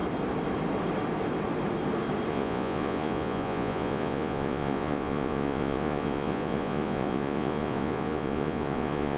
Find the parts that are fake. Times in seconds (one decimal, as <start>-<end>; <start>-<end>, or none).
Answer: 2.3-9.2